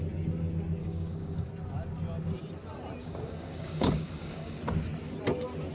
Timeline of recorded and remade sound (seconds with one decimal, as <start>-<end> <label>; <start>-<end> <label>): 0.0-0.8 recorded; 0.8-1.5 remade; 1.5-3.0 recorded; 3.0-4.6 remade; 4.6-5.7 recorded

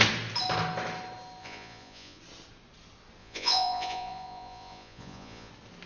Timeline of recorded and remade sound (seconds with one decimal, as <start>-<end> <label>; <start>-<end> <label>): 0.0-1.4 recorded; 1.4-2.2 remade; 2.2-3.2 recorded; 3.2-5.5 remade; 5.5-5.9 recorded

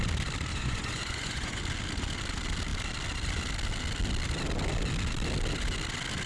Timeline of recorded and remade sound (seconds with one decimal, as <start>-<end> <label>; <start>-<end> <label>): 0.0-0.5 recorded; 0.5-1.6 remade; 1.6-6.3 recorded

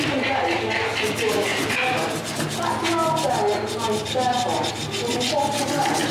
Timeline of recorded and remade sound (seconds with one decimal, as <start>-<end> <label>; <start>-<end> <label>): 0.0-6.1 recorded

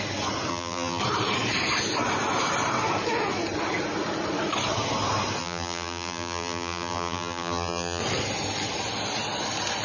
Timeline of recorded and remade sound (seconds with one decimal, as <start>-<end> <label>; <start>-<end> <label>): 0.0-0.5 recorded; 0.5-1.0 remade; 1.0-5.4 recorded; 5.4-8.0 remade; 8.0-9.8 recorded